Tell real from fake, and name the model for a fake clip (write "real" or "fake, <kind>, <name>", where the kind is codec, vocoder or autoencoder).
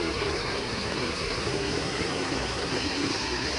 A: fake, codec, SNAC